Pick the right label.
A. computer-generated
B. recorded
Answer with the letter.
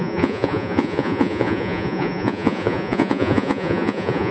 A